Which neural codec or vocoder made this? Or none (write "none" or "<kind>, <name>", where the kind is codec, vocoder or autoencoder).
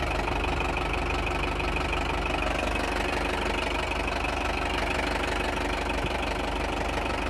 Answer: none